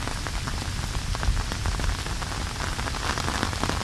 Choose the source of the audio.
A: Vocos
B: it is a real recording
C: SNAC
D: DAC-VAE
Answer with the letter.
B